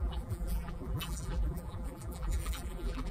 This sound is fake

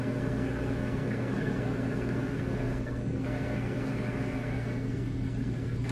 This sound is fake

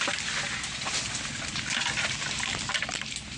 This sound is real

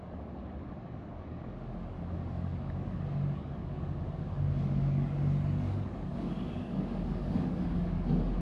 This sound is fake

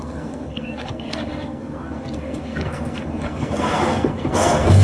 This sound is fake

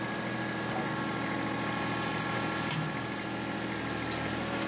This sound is real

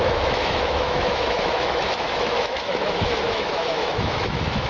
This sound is fake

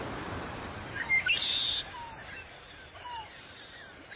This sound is real